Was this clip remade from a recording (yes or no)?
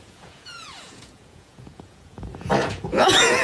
yes